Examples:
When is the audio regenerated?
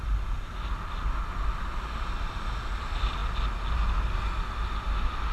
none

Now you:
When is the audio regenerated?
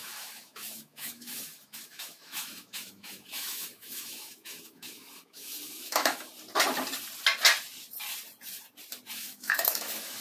0.0-6.3; 9.1-10.2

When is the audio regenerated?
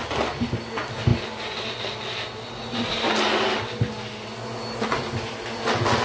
none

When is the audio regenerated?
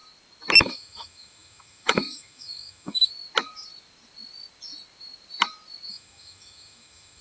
0.6-3.1; 5.9-7.2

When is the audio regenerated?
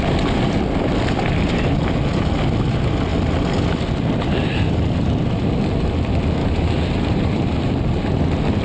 6.4-8.2